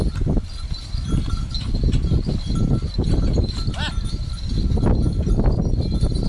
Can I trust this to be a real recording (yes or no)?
yes